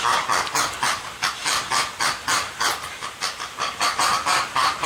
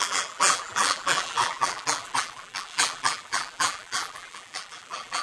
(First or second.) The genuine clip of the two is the first